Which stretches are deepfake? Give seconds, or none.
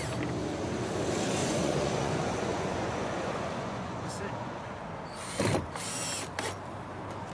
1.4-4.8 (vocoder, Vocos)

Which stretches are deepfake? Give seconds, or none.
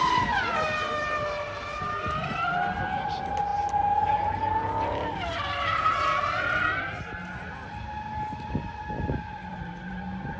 9.2-9.9 (vocoder, BigVGAN v2)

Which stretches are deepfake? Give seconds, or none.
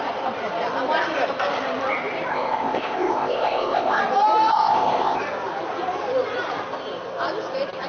2.3-4.0 (codec, ZipCodec); 4.5-5.2